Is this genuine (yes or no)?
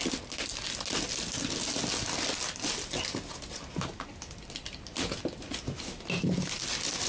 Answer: yes